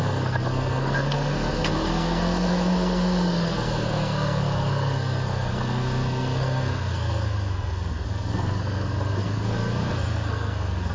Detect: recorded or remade remade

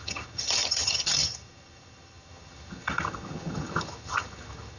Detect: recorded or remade remade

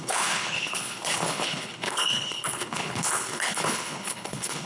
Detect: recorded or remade remade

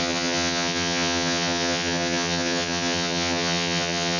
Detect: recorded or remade remade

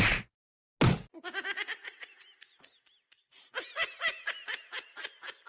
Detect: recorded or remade recorded